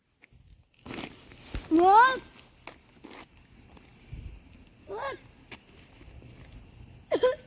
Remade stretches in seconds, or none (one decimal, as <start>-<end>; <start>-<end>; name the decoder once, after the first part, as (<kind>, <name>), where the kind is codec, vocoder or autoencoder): 0.7-1.4 (vocoder, BigVGAN v2)